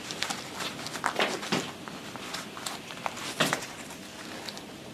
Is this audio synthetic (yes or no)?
no